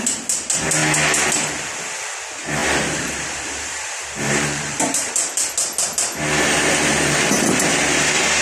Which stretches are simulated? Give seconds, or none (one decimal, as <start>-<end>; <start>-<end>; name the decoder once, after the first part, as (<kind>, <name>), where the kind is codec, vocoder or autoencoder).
2.6-5.1 (vocoder, BigVGAN v2); 7.7-8.4